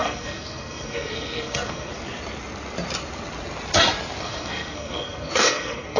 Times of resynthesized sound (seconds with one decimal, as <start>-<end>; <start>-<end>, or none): 0.0-1.9; 4.2-6.0